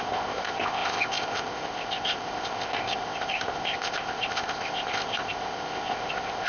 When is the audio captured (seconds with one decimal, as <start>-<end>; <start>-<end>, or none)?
none